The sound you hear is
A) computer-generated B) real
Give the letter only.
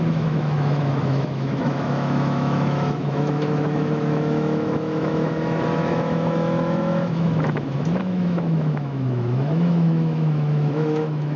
A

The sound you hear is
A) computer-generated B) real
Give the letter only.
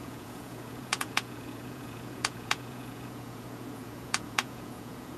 A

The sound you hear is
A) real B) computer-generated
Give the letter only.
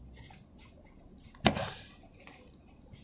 A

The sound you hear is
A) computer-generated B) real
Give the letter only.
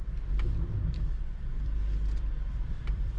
A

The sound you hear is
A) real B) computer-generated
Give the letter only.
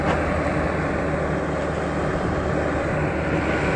A